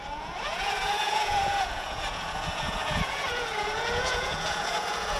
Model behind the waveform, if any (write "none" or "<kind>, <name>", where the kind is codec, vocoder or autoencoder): vocoder, Vocos